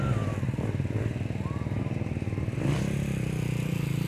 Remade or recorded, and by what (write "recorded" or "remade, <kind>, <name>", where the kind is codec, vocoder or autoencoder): recorded